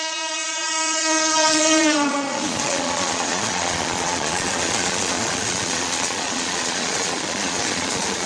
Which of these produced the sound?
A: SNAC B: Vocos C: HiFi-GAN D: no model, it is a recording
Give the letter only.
B